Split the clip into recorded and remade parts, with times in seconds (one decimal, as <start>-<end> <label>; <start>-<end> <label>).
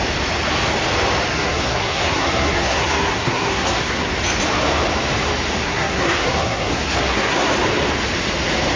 0.0-1.3 recorded; 1.3-4.1 remade; 4.1-5.6 recorded; 5.6-7.5 remade; 7.5-8.8 recorded